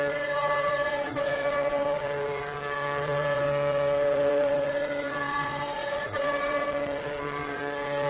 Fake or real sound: fake